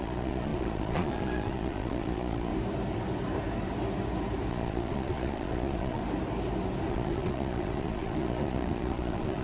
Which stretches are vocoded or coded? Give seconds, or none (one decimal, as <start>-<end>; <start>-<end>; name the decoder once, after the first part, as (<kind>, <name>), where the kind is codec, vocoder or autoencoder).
0.0-2.5 (vocoder, Vocos); 4.5-6.0; 6.9-9.4